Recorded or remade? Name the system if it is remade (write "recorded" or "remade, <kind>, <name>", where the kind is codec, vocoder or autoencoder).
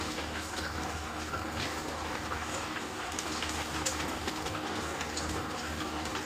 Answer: remade, codec, DAC